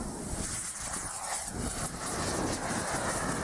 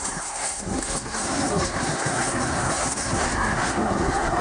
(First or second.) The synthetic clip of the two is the second